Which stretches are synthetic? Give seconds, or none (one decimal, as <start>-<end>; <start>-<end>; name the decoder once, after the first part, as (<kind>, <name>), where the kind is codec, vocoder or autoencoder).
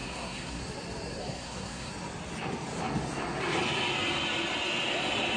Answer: 0.0-0.6 (codec, SNAC); 1.2-1.9